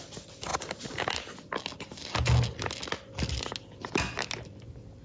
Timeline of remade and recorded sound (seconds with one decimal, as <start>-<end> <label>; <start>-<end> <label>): 0.0-5.0 recorded